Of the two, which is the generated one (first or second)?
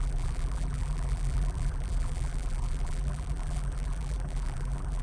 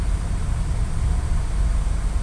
first